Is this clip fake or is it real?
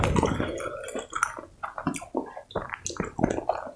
real